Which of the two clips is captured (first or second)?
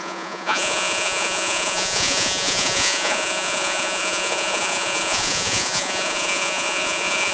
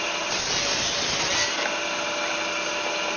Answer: second